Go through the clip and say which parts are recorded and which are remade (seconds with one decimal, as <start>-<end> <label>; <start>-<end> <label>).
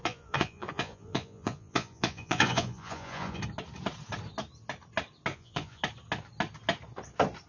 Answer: 0.0-3.4 remade; 3.4-5.3 recorded; 5.3-5.8 remade; 5.8-7.5 recorded